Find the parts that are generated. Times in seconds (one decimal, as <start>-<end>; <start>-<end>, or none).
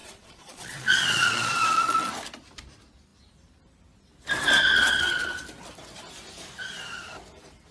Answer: 0.0-2.1